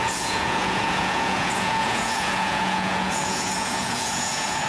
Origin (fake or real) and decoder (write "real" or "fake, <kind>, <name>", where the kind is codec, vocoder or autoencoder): fake, vocoder, Vocos